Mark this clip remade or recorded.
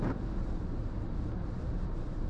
remade